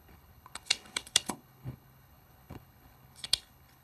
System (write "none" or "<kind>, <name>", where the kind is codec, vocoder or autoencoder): codec, HILCodec